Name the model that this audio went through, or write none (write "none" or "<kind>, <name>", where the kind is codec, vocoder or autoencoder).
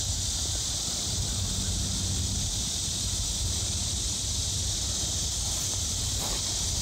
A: none